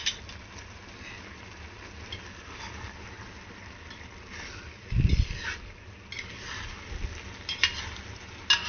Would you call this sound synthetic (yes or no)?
no